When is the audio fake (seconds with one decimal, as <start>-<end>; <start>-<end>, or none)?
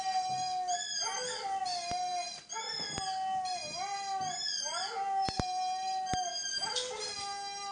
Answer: none